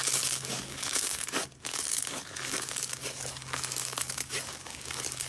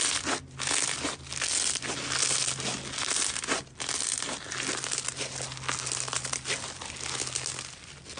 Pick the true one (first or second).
second